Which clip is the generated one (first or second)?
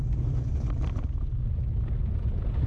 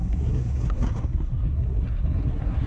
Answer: second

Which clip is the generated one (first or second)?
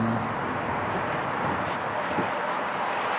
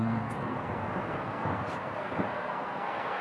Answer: second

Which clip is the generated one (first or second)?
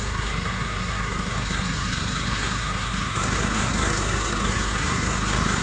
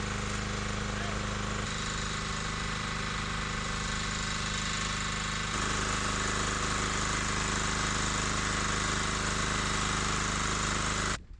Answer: first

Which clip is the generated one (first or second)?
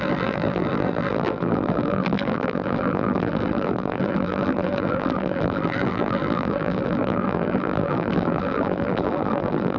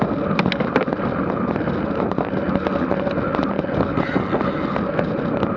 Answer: first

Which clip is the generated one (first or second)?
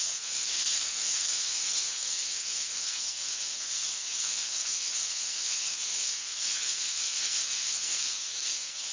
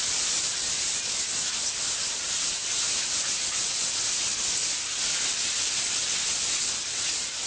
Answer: first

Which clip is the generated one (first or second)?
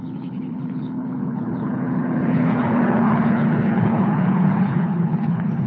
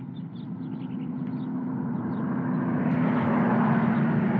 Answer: first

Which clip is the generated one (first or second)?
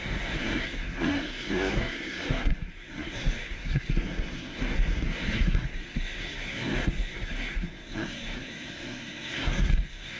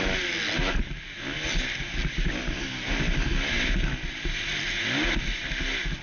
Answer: first